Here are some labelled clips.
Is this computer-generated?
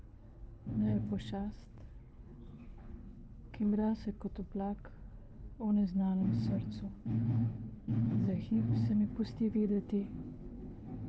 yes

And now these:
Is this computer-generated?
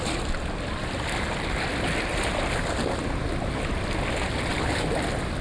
no